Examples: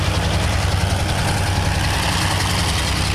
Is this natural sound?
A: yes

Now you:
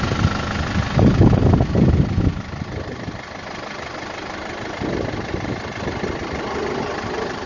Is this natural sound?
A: yes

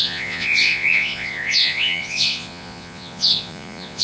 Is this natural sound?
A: no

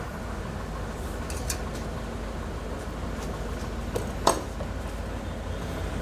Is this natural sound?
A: yes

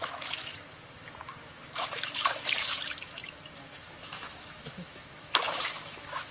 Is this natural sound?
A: no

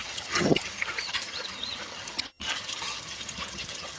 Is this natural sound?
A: no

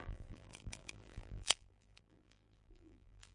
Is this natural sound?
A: no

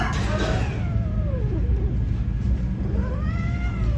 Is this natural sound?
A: yes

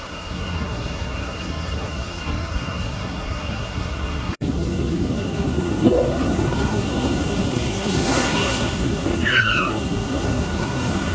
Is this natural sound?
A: no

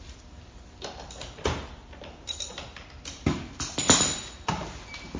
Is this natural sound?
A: yes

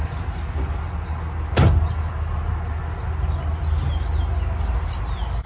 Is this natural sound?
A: yes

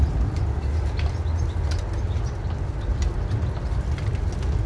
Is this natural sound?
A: yes